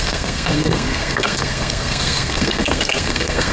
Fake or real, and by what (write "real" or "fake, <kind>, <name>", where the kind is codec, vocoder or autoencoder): fake, codec, SNAC